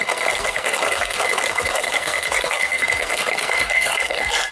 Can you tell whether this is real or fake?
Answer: fake